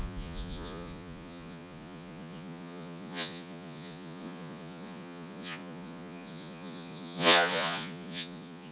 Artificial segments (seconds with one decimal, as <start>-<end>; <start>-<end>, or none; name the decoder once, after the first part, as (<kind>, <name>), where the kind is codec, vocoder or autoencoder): 0.0-8.7 (vocoder, Vocos)